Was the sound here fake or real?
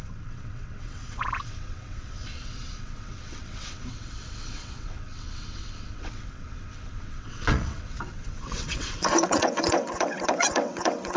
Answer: fake